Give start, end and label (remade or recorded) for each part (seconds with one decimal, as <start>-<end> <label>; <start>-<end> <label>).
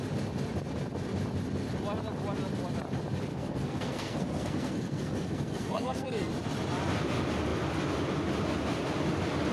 0.0-3.3 recorded; 3.3-6.3 remade; 6.3-9.5 recorded